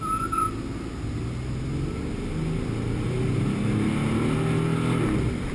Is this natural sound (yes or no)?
yes